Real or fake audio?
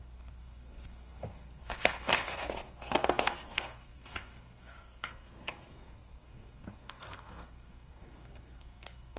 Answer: fake